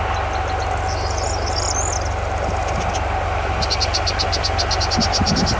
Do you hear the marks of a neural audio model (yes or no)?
no